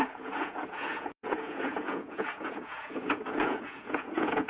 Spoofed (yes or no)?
yes